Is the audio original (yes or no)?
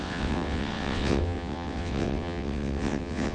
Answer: no